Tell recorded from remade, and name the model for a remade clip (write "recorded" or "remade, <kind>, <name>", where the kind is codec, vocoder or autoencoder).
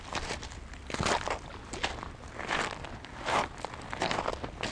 recorded